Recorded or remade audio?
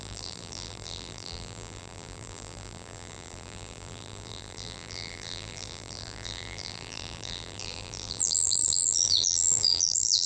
remade